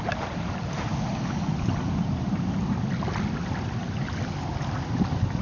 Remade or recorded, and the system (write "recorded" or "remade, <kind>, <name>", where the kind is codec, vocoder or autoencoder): recorded